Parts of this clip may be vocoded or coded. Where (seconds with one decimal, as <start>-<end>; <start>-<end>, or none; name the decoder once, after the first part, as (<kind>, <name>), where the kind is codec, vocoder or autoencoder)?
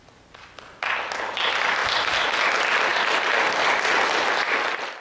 1.8-2.4 (vocoder, BigVGAN v2); 2.9-4.6